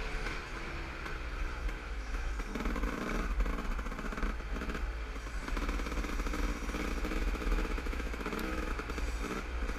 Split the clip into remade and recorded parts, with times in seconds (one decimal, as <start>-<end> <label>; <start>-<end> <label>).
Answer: 0.0-1.8 recorded; 1.8-2.3 remade; 2.3-7.2 recorded; 7.2-8.8 remade; 8.8-9.8 recorded